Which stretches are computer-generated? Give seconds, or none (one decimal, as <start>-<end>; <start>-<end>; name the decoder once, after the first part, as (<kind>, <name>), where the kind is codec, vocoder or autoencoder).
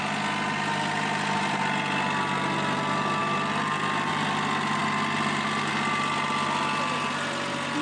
none